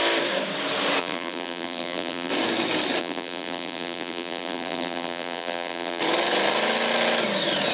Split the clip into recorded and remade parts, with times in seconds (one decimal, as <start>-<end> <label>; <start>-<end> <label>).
0.0-1.0 recorded; 1.0-2.3 remade; 2.3-3.0 recorded; 3.0-6.0 remade; 6.0-7.7 recorded